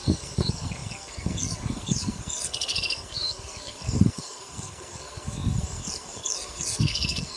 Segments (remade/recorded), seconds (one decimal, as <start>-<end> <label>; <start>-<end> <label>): 0.0-7.4 remade

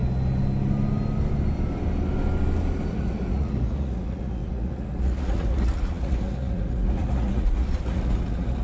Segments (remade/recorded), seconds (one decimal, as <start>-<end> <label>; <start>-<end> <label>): 0.0-2.9 recorded; 2.9-8.6 remade

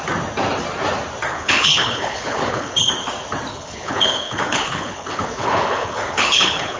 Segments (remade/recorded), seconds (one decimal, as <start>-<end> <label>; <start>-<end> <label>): 0.0-1.3 recorded; 1.3-2.9 remade; 2.9-3.5 recorded; 3.5-6.8 remade